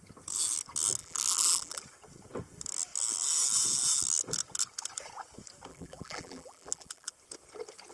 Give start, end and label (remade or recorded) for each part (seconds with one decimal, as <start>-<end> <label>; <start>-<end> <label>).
0.0-1.0 recorded; 1.0-1.8 remade; 1.8-5.7 recorded; 5.7-7.1 remade; 7.1-7.9 recorded